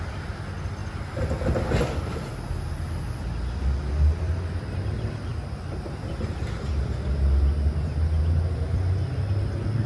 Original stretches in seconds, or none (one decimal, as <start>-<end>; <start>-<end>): 0.0-9.9